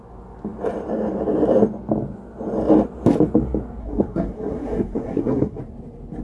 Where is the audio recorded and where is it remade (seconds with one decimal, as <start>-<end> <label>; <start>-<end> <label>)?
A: 0.0-3.8 recorded; 3.8-5.6 remade; 5.6-6.2 recorded